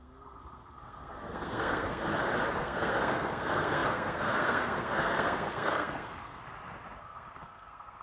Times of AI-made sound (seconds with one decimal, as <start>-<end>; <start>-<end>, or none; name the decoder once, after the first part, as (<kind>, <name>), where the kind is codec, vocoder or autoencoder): 0.0-2.1 (codec, SNAC); 2.6-6.4; 7.0-8.0